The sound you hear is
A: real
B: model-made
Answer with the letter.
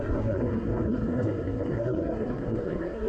B